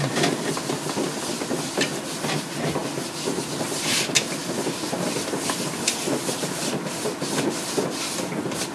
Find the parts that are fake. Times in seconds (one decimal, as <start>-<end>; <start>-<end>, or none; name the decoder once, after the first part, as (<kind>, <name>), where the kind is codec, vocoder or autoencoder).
none